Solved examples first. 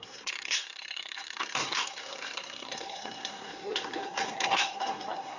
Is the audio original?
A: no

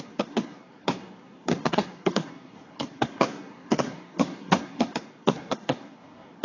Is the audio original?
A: no